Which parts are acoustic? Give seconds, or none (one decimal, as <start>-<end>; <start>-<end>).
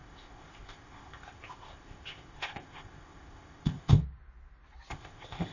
4.0-4.9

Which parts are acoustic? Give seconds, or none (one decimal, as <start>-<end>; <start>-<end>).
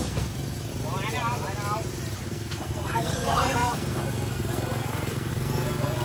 0.7-2.2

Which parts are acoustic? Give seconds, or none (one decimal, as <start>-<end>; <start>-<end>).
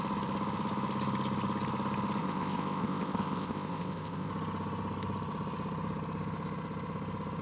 0.0-2.2; 4.3-7.4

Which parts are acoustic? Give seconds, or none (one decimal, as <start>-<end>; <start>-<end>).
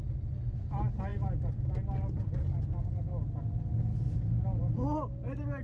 0.0-5.6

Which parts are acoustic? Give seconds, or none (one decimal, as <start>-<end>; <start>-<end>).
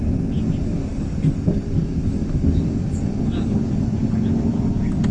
0.0-5.1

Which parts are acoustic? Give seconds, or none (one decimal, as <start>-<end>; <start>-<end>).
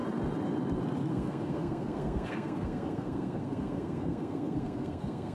0.0-1.1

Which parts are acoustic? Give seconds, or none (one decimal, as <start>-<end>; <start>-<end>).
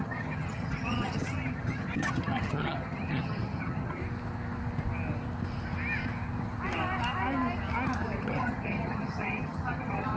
4.0-8.2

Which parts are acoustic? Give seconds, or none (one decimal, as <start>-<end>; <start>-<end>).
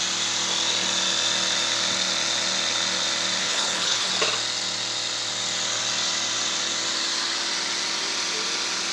0.0-3.4; 4.1-8.9